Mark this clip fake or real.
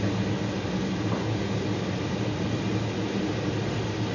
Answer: real